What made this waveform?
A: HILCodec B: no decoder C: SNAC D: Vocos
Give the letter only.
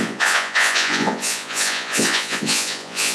D